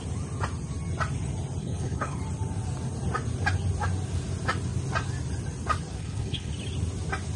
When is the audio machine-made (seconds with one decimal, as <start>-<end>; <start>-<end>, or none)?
1.6-2.2; 6.0-6.5